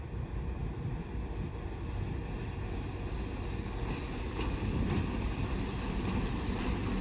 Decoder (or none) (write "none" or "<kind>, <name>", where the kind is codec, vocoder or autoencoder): none